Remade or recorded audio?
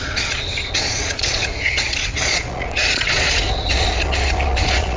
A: remade